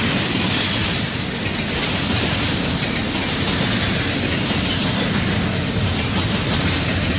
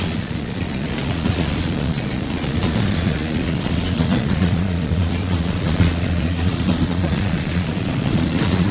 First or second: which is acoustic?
first